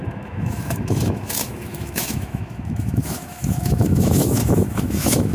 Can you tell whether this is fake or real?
fake